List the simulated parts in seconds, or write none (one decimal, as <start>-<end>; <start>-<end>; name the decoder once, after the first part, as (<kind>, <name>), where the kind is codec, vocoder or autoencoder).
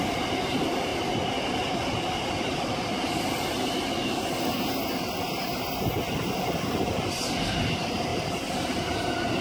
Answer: 8.1-8.8 (vocoder, BigVGAN v2)